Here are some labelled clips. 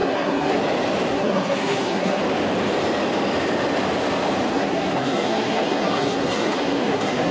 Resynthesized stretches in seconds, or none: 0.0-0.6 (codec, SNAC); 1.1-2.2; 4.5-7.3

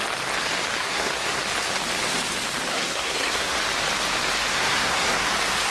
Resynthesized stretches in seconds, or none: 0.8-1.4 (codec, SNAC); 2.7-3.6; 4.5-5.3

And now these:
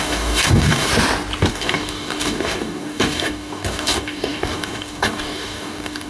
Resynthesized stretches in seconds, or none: 0.0-0.9 (codec, DAC); 1.5-6.1